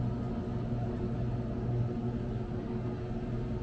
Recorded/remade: recorded